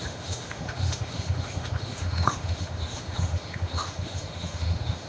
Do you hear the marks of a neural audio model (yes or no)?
yes